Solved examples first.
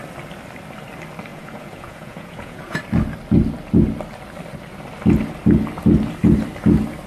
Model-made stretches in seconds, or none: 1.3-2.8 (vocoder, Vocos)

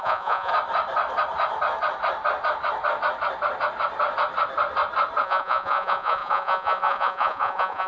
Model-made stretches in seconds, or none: 0.0-0.5 (vocoder, Vocos); 5.2-7.9

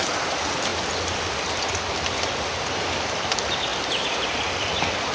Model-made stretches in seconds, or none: none

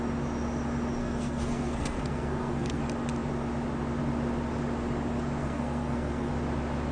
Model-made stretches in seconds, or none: 1.0-2.8 (codec, SNAC); 5.4-6.3

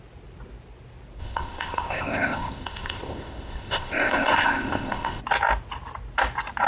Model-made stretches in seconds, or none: 1.2-5.2 (codec, ZipCodec)

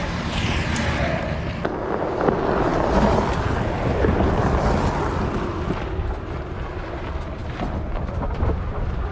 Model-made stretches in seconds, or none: none